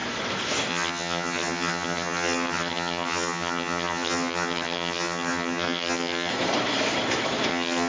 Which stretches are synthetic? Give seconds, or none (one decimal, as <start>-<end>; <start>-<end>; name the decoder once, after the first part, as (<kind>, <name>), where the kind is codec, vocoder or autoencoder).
0.7-6.3 (vocoder, HiFi-GAN); 7.5-7.9